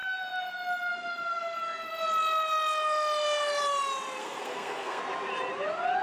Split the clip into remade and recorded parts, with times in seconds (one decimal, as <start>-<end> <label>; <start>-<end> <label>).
0.0-4.2 recorded; 4.2-5.0 remade; 5.0-6.0 recorded